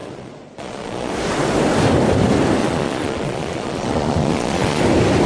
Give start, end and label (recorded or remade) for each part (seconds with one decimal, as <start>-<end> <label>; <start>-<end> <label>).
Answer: 0.0-1.1 remade; 1.1-2.6 recorded; 2.6-4.8 remade; 4.8-5.3 recorded